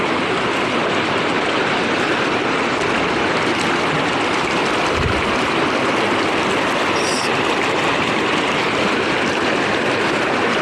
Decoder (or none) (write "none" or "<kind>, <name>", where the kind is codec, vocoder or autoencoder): none